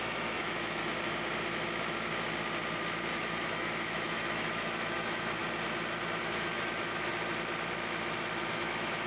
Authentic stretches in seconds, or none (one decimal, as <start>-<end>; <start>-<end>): 0.8-3.1; 5.4-6.2; 7.1-8.5